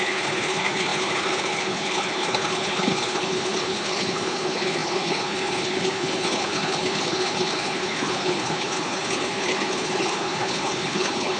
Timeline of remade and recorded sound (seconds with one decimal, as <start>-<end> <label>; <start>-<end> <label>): 0.0-11.4 remade